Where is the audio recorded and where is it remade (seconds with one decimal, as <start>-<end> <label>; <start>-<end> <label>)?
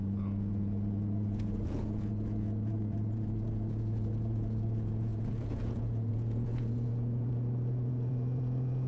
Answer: 0.0-8.9 remade